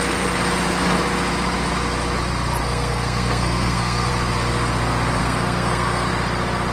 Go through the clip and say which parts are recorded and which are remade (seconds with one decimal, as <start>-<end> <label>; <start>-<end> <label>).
0.0-2.6 recorded; 2.6-4.1 remade; 4.1-5.2 recorded; 5.2-6.1 remade; 6.1-6.7 recorded